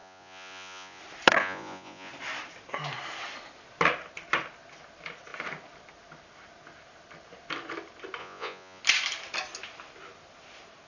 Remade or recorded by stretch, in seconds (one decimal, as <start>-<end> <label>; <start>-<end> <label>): 0.0-1.0 remade; 1.0-1.4 recorded; 1.4-2.1 remade; 2.1-8.2 recorded; 8.2-8.8 remade; 8.8-10.9 recorded

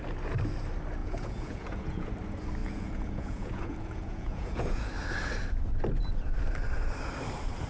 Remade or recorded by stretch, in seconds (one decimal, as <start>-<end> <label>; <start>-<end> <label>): 0.0-1.0 recorded; 1.0-2.1 remade; 2.1-2.6 recorded; 2.6-4.8 remade; 4.8-7.7 recorded

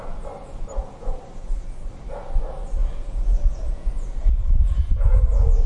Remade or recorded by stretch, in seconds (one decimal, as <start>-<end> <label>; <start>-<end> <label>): 0.0-1.4 recorded; 1.4-1.9 remade; 1.9-2.8 recorded; 2.8-5.7 remade

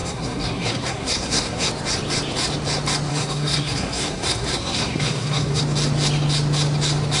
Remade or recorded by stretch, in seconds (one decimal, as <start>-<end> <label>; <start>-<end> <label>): 0.0-1.7 remade; 1.7-3.1 recorded; 3.1-5.6 remade; 5.6-7.2 recorded

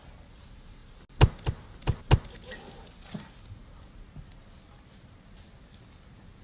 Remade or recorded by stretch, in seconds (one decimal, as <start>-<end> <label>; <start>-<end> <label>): 0.0-6.4 recorded

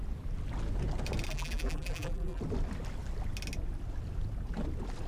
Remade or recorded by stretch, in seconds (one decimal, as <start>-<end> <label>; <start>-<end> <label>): 0.0-1.3 recorded; 1.3-2.4 remade; 2.4-5.1 recorded

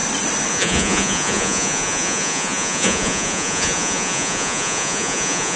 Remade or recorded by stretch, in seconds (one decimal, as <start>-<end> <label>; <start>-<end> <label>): 0.0-0.5 recorded; 0.5-5.6 remade

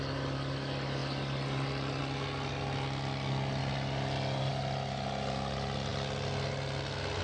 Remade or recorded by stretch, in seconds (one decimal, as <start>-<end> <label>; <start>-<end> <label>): 0.0-7.2 recorded